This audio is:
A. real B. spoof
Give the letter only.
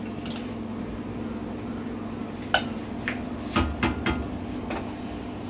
A